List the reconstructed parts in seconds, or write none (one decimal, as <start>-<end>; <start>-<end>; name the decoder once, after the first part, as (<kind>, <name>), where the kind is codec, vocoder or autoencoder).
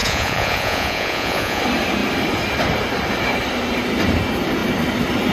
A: 0.0-1.6 (vocoder, Vocos)